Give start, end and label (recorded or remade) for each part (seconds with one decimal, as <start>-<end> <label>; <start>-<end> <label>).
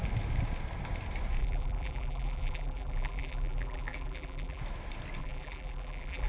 0.0-1.4 recorded; 1.4-4.6 remade; 4.6-5.2 recorded; 5.2-6.3 remade